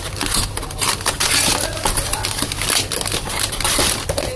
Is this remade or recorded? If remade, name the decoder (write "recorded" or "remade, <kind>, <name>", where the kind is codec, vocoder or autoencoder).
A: recorded